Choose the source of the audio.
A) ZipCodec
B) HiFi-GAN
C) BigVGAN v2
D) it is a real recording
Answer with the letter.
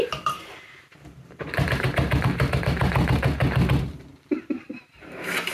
C